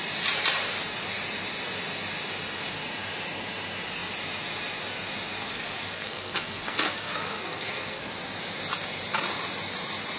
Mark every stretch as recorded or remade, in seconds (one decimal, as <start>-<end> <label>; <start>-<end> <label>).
0.0-5.4 recorded; 5.4-8.1 remade; 8.1-10.2 recorded